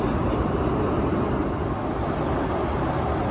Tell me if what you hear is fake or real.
real